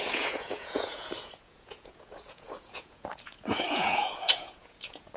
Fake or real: fake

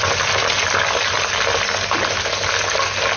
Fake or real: real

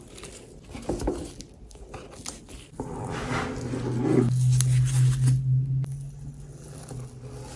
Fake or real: real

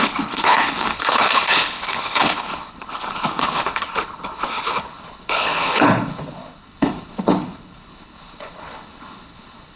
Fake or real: fake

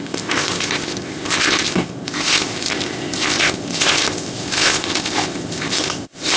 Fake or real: fake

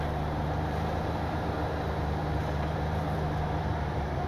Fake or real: fake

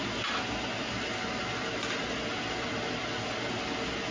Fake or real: real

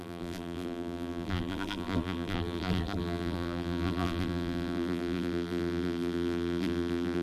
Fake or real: fake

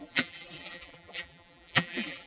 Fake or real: fake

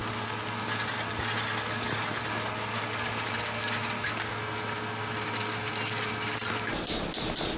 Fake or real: real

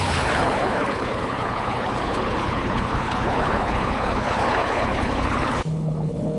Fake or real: fake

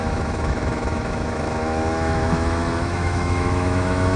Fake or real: fake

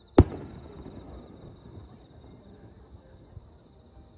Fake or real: real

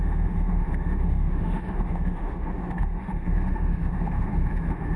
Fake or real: fake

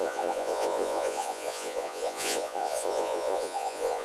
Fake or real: fake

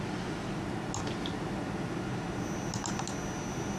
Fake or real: real